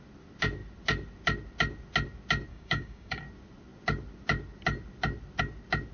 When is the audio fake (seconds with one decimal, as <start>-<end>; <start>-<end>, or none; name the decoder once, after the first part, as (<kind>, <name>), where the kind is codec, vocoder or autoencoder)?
2.5-3.2 (codec, DAC)